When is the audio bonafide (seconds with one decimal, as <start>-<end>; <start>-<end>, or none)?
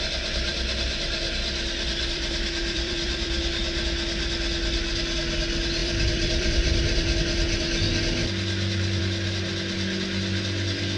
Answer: 0.0-0.5; 3.4-5.8; 7.2-8.2; 9.0-11.0